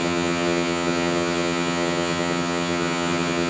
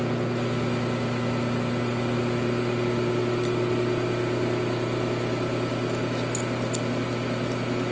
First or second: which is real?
second